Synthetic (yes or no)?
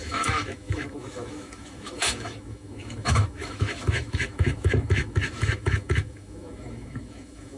yes